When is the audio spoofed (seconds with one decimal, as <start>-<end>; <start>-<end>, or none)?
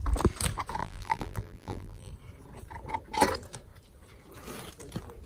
0.8-2.1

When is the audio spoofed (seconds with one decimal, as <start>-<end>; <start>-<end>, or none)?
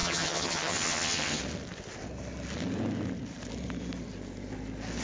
0.0-1.4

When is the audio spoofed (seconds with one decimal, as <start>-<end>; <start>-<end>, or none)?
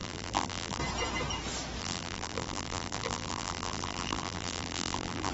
0.0-0.8; 1.8-5.3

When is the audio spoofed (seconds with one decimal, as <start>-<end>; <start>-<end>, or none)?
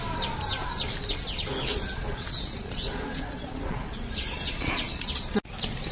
1.7-5.2